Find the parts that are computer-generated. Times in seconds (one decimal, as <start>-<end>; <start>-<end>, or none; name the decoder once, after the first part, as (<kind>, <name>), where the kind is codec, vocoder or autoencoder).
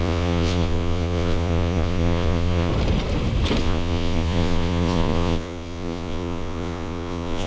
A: 0.0-2.7 (vocoder, Vocos); 3.6-7.5